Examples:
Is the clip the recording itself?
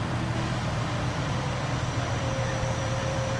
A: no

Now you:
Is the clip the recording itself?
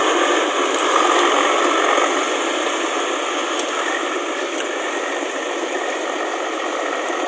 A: no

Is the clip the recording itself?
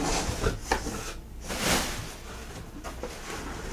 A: yes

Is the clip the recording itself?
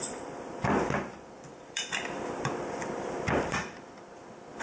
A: no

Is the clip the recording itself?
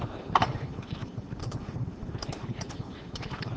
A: no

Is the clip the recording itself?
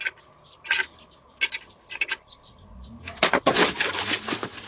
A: yes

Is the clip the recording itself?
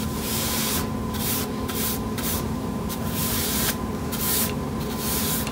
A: no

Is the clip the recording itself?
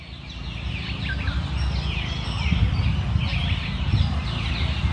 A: yes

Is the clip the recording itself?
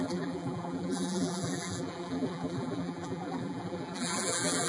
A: no